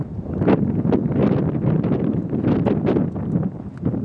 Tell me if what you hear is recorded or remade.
recorded